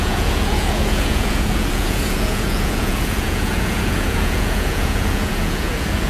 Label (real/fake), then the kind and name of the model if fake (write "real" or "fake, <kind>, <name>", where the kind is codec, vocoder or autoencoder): fake, vocoder, Vocos